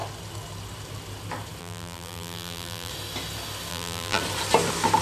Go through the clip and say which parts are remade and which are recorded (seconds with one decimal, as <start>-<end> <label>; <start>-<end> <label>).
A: 0.0-1.6 recorded; 1.6-2.9 remade; 2.9-3.7 recorded; 3.7-4.2 remade; 4.2-5.0 recorded